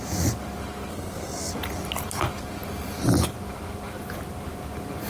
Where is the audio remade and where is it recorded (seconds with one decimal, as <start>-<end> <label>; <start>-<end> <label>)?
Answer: 0.0-0.9 recorded; 0.9-1.5 remade; 1.5-5.1 recorded